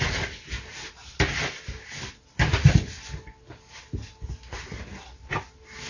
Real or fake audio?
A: real